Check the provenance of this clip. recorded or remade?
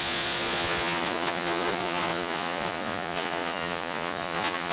remade